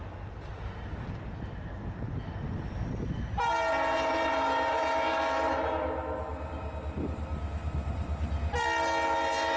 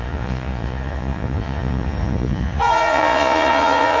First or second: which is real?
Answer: first